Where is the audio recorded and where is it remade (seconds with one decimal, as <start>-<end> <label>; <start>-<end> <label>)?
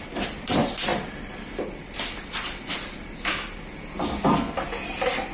0.0-5.3 recorded